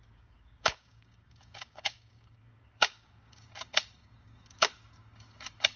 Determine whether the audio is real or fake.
fake